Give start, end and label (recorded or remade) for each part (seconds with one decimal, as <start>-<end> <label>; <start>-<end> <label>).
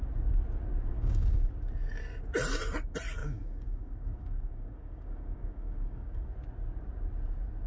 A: 0.0-0.9 recorded; 0.9-1.5 remade; 1.5-3.2 recorded; 3.2-6.3 remade; 6.3-7.7 recorded